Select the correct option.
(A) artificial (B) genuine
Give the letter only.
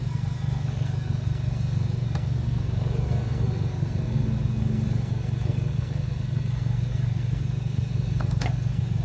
A